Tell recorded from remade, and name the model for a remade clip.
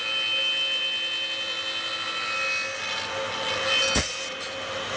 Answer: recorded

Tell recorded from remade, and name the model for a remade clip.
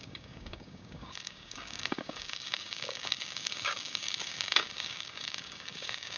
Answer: remade, codec, DAC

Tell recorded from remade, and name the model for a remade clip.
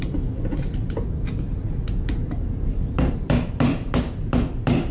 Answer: recorded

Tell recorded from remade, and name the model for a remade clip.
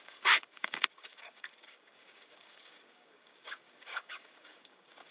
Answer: remade, codec, DAC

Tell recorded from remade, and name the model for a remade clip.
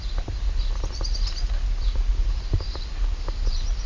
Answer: recorded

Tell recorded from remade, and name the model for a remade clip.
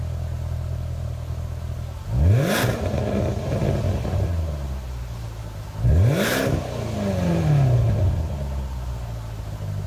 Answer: recorded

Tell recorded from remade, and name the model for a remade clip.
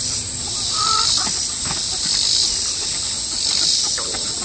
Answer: recorded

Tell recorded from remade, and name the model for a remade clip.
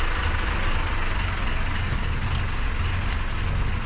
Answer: recorded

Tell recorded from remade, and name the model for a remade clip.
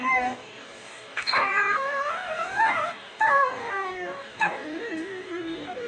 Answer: remade, codec, DAC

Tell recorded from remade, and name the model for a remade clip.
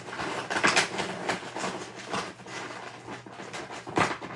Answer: recorded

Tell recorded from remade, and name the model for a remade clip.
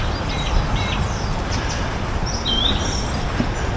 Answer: recorded